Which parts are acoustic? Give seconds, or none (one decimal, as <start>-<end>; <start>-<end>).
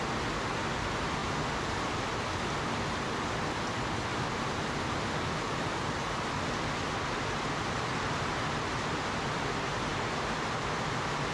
0.0-4.1; 4.8-9.9; 10.5-11.3